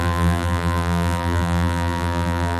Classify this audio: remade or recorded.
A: remade